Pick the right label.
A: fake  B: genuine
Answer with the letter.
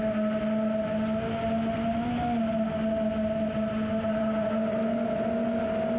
B